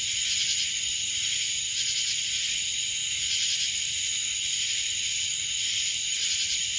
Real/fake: real